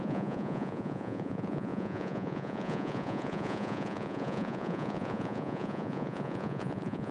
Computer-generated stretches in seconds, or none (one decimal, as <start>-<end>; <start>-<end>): 0.0-7.1